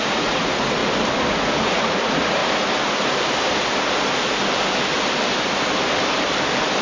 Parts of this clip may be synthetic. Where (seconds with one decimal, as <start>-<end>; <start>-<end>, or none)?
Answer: 0.0-0.8; 1.3-2.4